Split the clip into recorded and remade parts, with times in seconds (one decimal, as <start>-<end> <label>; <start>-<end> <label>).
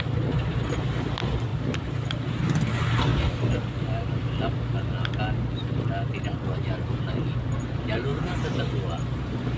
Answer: 0.0-1.5 recorded; 1.5-2.7 remade; 2.7-9.6 recorded